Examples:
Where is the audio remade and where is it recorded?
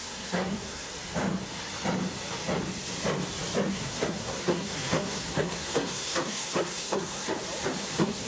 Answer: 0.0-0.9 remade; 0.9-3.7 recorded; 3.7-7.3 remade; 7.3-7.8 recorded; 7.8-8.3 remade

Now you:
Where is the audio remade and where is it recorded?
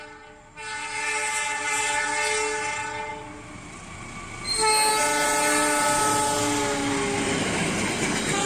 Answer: 0.0-8.5 recorded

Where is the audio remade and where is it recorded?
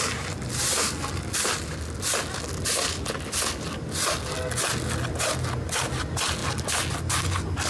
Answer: 0.0-7.7 recorded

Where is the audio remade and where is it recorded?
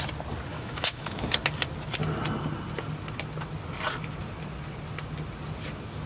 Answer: 0.0-0.5 recorded; 0.5-1.2 remade; 1.2-6.1 recorded